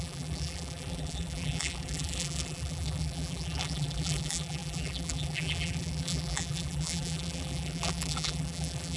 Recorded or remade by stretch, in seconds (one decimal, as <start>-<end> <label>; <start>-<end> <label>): 0.0-9.0 remade